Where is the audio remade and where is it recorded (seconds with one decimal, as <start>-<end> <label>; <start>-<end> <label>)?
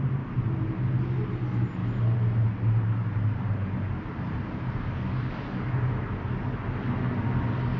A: 0.0-7.8 recorded